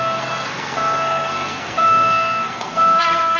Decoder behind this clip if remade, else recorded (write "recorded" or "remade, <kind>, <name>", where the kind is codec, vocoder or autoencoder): remade, codec, SNAC